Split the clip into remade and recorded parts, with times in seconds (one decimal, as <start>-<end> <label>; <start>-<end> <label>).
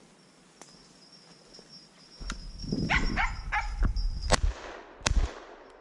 0.0-2.6 recorded; 2.6-3.3 remade; 3.3-5.8 recorded